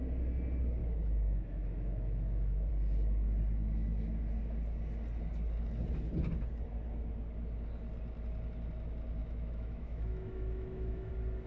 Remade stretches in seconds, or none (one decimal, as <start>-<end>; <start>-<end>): 0.8-2.7; 9.2-11.1